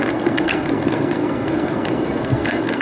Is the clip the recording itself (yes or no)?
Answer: no